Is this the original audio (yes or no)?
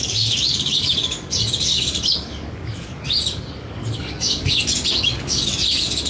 no